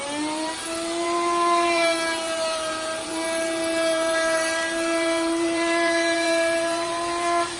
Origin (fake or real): fake